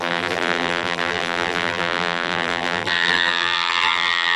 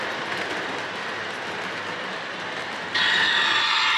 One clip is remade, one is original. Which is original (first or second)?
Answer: second